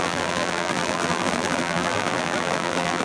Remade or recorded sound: remade